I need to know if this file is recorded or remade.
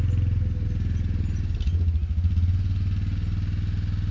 recorded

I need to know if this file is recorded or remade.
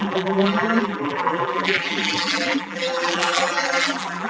remade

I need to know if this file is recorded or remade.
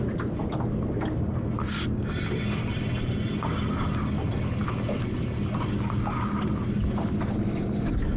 recorded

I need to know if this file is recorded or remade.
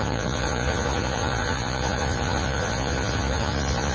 remade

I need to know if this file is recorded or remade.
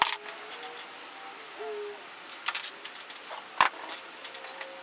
recorded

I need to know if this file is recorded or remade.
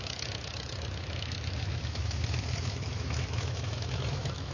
remade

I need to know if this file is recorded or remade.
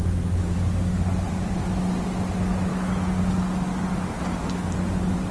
recorded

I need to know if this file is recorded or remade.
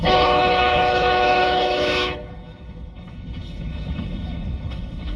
remade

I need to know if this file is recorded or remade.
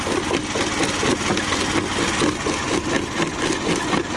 recorded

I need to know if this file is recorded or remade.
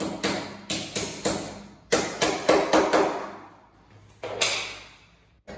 recorded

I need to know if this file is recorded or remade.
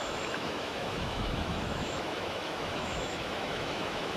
remade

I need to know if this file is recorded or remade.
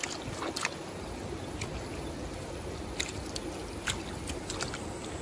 recorded